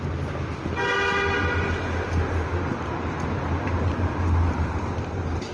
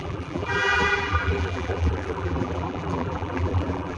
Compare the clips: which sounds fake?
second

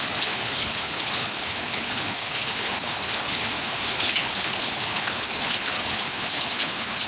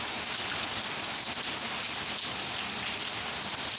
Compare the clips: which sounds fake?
first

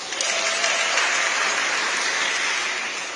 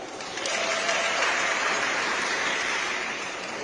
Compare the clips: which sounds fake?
second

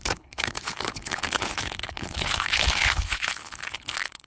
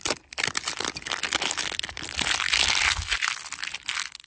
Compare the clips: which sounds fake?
first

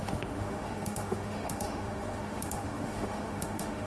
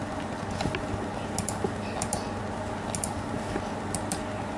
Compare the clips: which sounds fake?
first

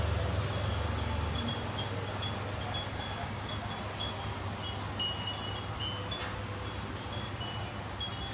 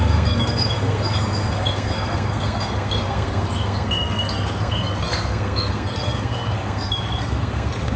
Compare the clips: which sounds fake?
second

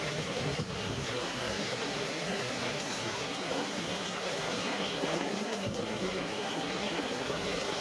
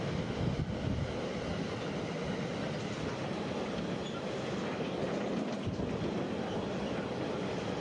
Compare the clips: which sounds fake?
first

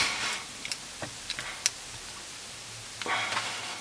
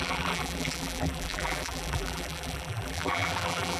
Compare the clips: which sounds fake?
second